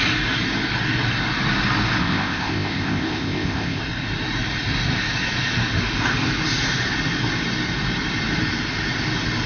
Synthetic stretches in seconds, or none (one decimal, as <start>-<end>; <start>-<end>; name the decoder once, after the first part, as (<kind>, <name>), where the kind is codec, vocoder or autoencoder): 2.0-3.8 (codec, ZipCodec)